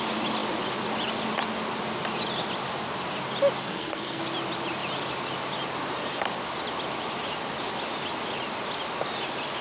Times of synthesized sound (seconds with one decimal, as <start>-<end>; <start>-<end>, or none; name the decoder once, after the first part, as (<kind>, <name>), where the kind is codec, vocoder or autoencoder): 3.6-4.2 (codec, SNAC)